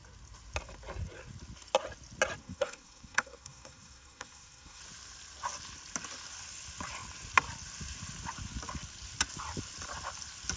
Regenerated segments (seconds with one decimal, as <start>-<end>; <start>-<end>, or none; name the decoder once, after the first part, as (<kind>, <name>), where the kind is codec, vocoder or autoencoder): 2.4-4.8 (codec, SNAC)